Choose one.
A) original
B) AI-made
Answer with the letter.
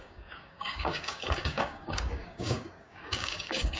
B